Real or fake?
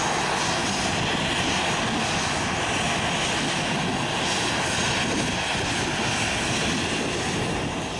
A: real